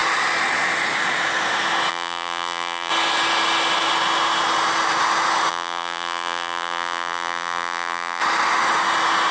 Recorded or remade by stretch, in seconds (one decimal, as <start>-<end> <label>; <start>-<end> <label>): 0.0-1.9 recorded; 1.9-2.9 remade; 2.9-5.5 recorded; 5.5-8.2 remade; 8.2-9.3 recorded